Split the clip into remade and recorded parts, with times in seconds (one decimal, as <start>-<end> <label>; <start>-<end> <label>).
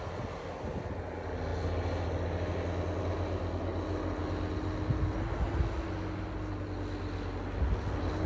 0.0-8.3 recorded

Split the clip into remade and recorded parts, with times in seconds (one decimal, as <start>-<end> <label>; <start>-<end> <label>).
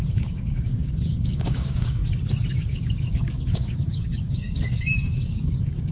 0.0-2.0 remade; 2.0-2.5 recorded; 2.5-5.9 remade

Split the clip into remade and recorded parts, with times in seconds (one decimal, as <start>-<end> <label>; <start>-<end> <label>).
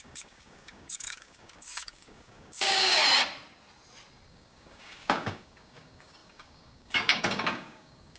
0.0-3.0 remade; 3.0-4.3 recorded; 4.3-8.2 remade